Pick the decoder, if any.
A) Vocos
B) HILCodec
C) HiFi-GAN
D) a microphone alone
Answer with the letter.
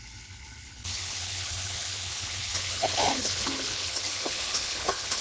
B